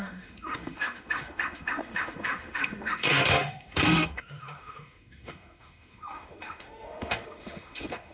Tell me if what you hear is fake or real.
fake